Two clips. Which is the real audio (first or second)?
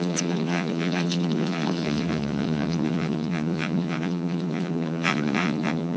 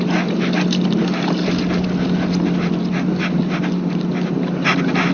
second